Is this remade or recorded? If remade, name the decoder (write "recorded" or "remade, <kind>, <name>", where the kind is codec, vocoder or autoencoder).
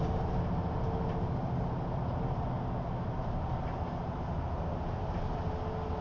recorded